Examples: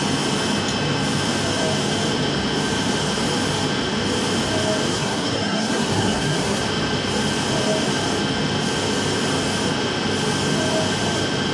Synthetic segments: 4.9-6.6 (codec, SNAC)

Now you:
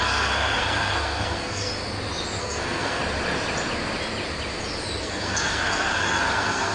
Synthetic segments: 0.0-1.7 (codec, SNAC); 2.4-3.0; 5.0-6.7

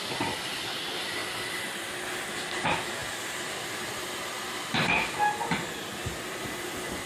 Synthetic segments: none

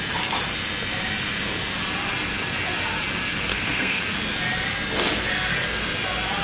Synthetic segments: 3.5-4.0 (codec, SNAC)